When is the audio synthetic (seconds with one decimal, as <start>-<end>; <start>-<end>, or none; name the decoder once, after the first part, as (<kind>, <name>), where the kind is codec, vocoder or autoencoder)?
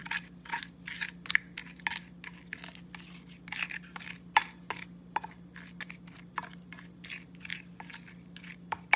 none